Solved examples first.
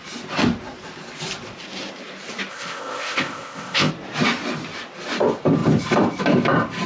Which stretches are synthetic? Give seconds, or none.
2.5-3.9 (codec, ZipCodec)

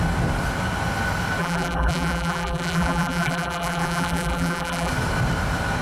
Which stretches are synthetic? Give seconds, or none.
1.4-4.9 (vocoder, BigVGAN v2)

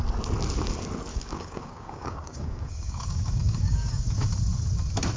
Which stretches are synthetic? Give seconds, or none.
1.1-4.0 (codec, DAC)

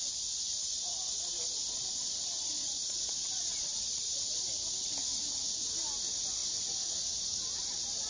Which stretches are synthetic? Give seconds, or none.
0.6-4.5 (vocoder, Vocos)

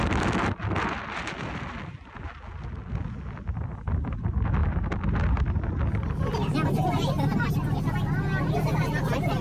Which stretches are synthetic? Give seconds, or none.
none